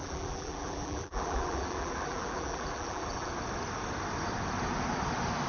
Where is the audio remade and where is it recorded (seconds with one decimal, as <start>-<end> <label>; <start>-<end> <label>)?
0.0-3.3 remade; 3.3-5.5 recorded